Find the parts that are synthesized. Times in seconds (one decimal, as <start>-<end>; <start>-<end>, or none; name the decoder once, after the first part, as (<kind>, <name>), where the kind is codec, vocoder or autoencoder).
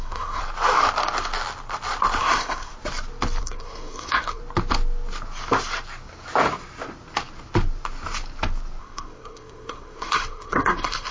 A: 0.0-0.4 (codec, SNAC); 2.2-2.7; 3.4-4.4; 8.8-11.1